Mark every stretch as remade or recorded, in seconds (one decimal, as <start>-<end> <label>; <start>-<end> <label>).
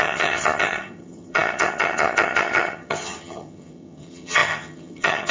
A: 0.0-5.3 remade